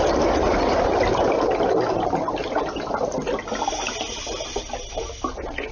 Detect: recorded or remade recorded